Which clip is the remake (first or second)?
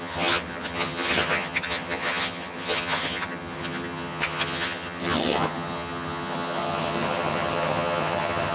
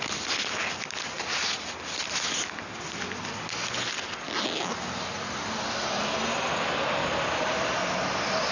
first